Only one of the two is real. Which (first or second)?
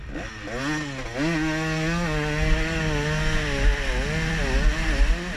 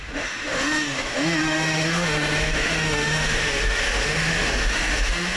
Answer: first